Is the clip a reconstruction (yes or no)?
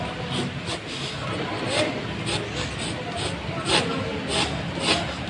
no